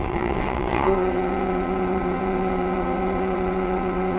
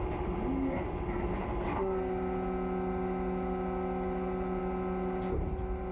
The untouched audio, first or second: second